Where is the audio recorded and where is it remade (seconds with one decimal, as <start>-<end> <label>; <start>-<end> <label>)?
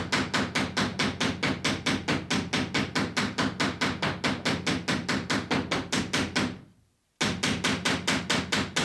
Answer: 0.0-8.8 recorded